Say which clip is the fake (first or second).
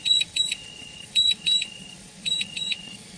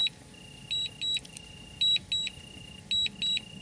first